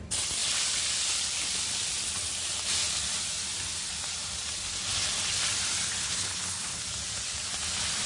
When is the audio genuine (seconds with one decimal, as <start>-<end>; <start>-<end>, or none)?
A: 0.0-6.0; 6.8-8.1